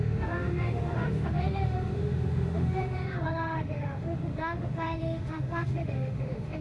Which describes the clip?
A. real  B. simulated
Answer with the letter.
B